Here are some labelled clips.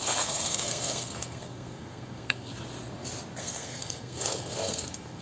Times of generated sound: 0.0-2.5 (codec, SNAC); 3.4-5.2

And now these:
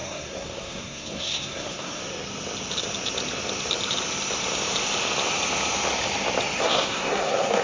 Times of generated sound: 0.0-2.0 (codec, SNAC); 6.6-7.6

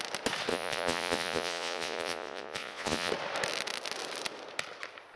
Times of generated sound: 0.5-3.1 (vocoder, Vocos)

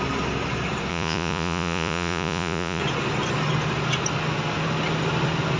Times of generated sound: 0.9-2.8 (vocoder, Vocos)

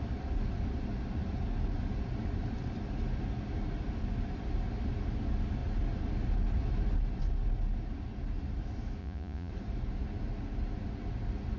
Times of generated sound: 9.0-9.5 (vocoder, Vocos)

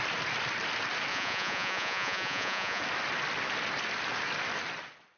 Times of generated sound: 1.1-2.8 (vocoder, Vocos)

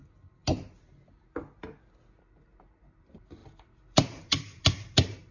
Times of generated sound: 3.4-5.3 (vocoder, BigVGAN v2)

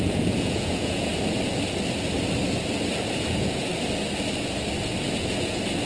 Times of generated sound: 0.0-1.1 (vocoder, Vocos); 3.0-3.7; 4.8-5.9